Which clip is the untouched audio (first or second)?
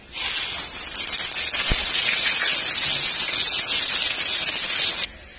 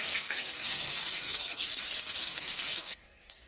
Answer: first